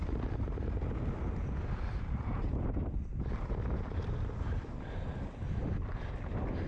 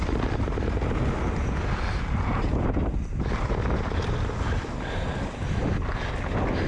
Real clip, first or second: second